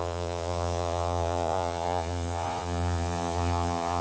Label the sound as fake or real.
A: fake